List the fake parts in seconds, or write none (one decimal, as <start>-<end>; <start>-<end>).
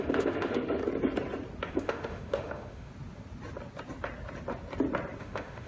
0.0-0.8; 1.7-2.9; 5.2-5.7